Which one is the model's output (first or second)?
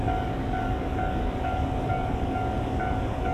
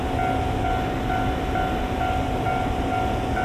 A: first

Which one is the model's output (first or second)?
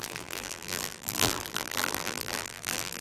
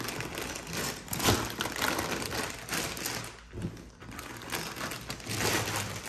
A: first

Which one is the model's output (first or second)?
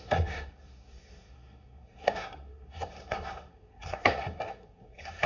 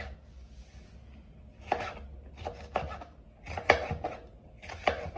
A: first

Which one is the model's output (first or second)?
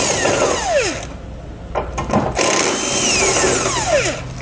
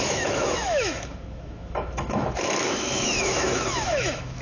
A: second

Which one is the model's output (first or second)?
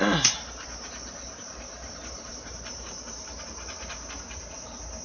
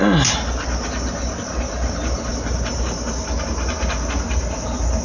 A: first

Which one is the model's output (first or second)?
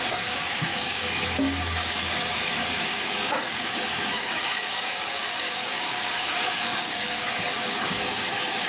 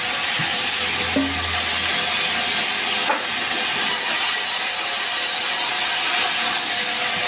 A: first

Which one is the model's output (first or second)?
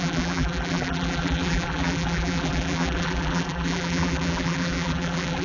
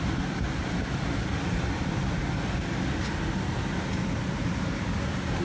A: first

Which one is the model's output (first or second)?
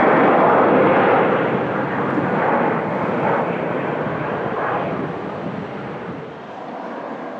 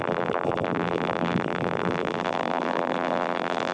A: second